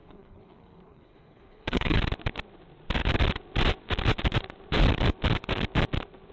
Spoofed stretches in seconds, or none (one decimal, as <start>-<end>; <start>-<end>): 0.0-2.0